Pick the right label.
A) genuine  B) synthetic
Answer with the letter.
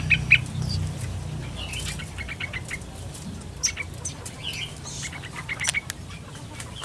A